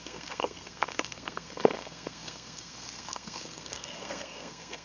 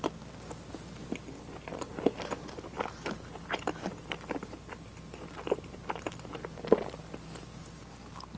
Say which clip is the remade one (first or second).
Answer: first